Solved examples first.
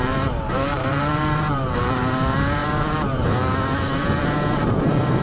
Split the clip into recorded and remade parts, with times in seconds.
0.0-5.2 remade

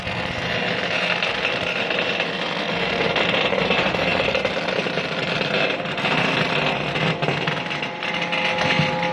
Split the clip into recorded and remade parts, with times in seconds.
0.0-9.1 recorded

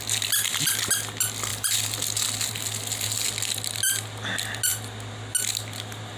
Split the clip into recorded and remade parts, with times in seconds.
0.0-6.2 recorded